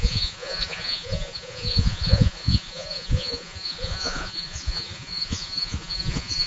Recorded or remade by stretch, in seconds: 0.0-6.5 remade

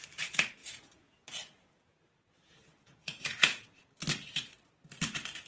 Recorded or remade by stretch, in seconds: 0.0-0.6 recorded; 0.6-3.9 remade; 3.9-5.5 recorded

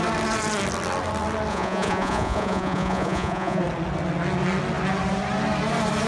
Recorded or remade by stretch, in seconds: 0.0-1.5 recorded; 1.5-3.6 remade; 3.6-6.1 recorded

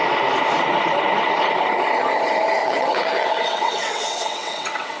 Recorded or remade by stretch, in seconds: 0.0-2.6 recorded; 2.6-5.0 remade